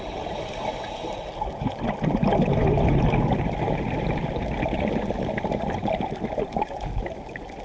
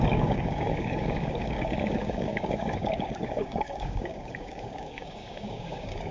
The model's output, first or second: second